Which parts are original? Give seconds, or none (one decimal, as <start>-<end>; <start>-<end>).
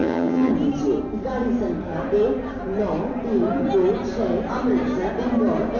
0.5-5.8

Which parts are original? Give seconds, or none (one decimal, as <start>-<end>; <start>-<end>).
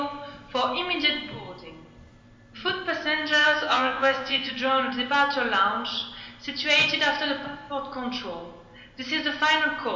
0.0-3.4; 4.5-10.0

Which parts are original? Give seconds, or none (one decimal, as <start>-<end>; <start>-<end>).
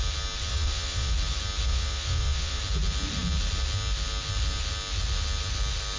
0.0-0.5; 1.1-1.7; 2.6-6.0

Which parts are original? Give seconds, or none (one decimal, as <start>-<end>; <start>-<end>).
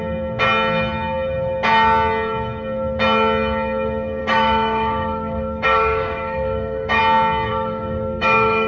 0.0-4.2; 7.0-7.5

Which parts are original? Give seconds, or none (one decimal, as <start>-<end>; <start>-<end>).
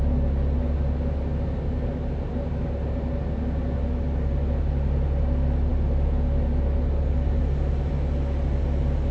0.0-9.1